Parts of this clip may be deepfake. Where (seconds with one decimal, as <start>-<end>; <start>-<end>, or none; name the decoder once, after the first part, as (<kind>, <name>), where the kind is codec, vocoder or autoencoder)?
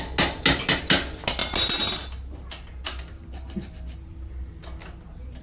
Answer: none